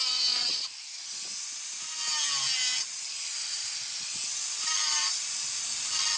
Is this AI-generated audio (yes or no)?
no